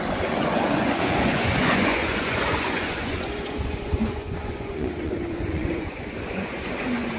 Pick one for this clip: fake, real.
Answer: fake